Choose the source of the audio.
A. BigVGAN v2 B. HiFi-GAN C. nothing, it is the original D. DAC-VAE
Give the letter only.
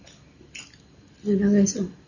C